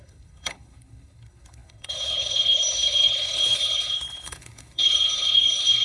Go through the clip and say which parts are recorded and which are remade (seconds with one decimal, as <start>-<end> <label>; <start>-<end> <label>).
0.0-5.8 remade